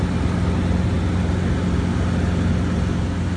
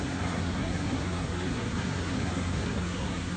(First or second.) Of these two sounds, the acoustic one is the first